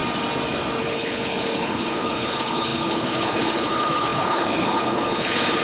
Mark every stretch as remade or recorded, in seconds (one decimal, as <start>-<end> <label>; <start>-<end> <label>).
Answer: 0.0-0.8 recorded; 0.8-5.6 remade